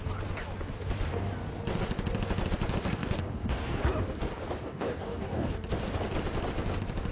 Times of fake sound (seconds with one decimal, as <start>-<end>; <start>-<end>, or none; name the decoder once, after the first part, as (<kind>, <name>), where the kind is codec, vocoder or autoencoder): 3.0-3.8 (codec, DAC); 4.6-5.5